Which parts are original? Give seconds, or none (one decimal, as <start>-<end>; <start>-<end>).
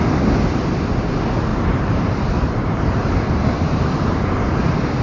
0.0-1.5; 4.5-5.0